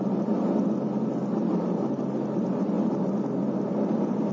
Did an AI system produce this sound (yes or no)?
no